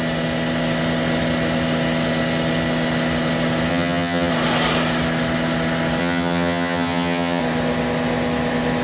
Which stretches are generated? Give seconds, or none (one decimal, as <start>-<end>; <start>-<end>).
3.7-4.3; 6.0-7.4